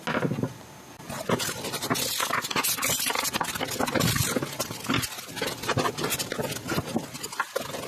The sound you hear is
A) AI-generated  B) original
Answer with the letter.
B